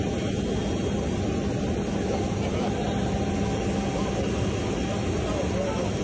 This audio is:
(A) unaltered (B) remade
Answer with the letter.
A